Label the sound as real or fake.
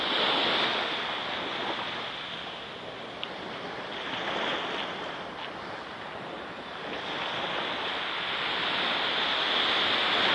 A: real